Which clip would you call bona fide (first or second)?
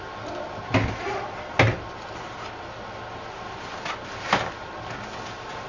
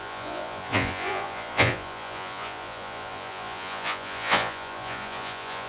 first